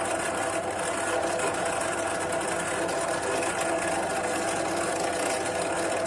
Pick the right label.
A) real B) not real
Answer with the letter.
A